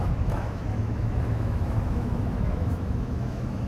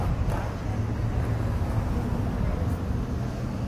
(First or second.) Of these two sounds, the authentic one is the second